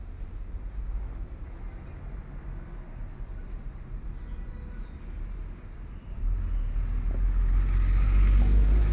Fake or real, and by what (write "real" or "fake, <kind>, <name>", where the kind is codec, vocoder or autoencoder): real